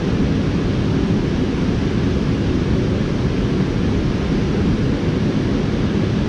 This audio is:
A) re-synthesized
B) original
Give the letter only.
B